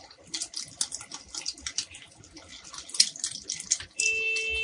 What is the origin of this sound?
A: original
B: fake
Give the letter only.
A